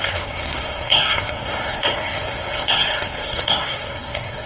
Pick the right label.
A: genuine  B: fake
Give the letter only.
B